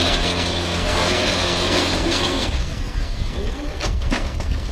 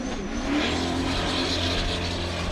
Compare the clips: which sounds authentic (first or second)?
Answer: second